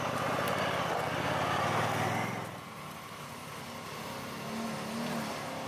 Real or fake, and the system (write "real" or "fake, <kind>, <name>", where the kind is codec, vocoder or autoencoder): real